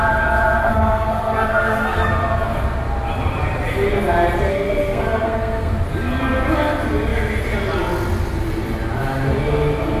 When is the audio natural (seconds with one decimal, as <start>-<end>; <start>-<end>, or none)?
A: 0.0-0.6; 2.1-4.5; 5.7-10.0